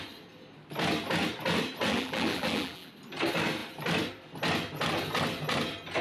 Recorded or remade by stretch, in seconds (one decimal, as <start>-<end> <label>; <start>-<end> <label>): 0.0-1.9 recorded; 1.9-2.9 remade; 2.9-6.0 recorded